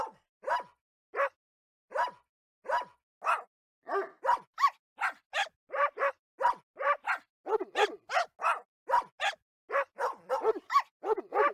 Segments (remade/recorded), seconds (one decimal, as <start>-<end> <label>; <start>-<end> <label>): 0.0-11.5 recorded